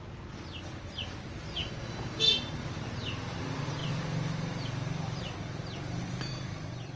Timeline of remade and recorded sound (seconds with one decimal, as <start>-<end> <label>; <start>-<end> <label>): 0.0-1.6 recorded; 1.6-2.2 remade; 2.2-7.0 recorded